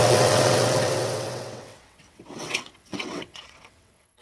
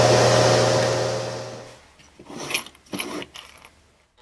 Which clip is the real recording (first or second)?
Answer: second